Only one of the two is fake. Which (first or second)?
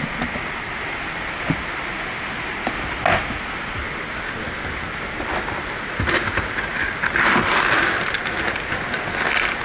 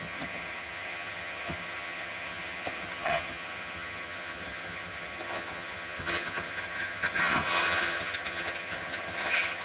second